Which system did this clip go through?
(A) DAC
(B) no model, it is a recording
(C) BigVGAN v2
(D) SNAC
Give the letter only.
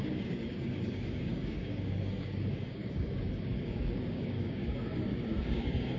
A